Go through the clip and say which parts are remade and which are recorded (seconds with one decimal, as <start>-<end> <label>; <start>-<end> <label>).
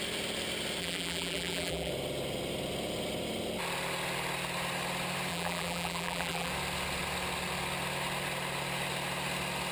0.0-0.8 recorded; 0.8-1.9 remade; 1.9-5.3 recorded; 5.3-6.5 remade; 6.5-9.7 recorded